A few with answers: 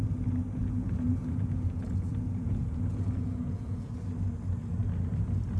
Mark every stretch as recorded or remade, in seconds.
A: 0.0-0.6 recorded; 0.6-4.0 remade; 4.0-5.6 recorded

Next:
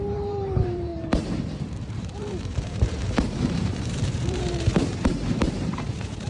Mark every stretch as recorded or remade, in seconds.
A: 0.0-6.3 remade

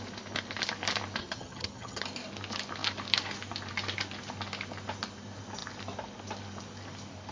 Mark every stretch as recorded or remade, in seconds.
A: 0.0-1.2 recorded; 1.2-2.0 remade; 2.0-7.3 recorded